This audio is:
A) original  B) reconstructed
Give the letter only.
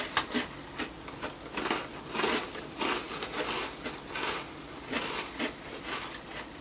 A